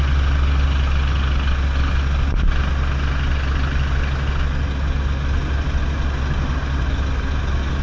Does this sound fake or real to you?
real